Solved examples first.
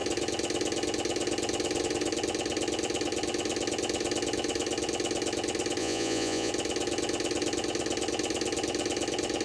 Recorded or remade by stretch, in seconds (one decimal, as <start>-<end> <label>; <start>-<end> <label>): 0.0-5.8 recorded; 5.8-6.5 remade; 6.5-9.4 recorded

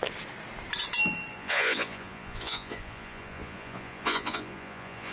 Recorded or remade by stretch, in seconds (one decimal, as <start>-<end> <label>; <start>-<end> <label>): 0.0-1.3 recorded; 1.3-5.1 remade

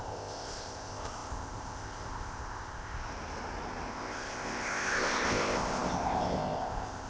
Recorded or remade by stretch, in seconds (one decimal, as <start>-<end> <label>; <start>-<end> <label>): 0.0-3.1 remade; 3.1-3.9 recorded; 3.9-7.1 remade